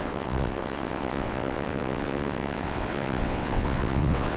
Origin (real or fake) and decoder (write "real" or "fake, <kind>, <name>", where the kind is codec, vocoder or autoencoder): fake, vocoder, WaveNeXt